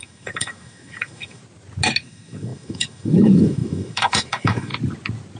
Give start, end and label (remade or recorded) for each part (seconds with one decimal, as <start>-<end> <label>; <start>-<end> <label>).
0.0-1.4 remade; 1.4-2.0 recorded; 2.0-4.7 remade; 4.7-5.4 recorded